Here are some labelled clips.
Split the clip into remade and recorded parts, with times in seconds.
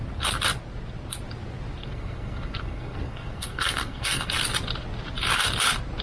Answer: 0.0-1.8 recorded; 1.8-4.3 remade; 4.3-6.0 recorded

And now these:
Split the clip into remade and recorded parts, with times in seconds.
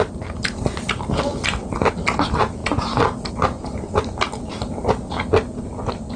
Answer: 0.0-6.2 recorded